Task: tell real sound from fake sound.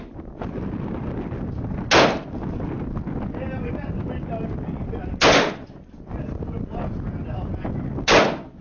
real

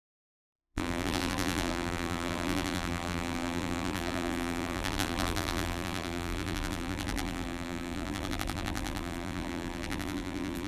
fake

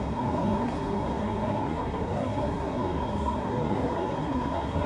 fake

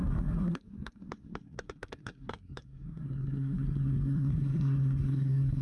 fake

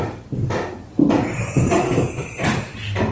real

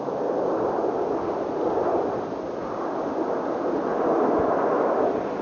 real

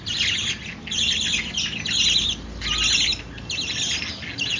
real